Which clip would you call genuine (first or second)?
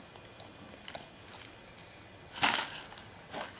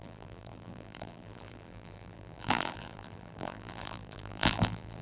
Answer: first